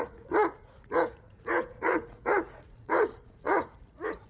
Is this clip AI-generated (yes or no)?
yes